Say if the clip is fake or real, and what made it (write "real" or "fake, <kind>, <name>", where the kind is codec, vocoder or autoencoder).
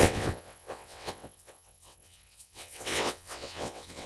fake, vocoder, WaveNeXt